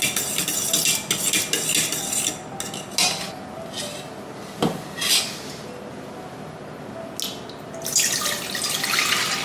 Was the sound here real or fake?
real